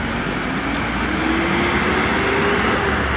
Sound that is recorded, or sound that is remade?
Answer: recorded